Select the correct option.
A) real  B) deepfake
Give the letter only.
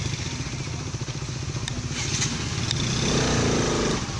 A